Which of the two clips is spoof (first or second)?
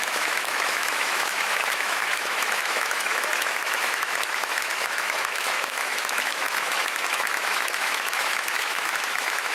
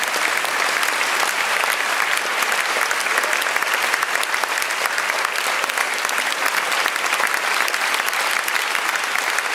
first